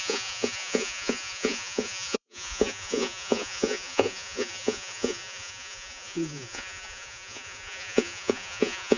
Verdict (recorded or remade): remade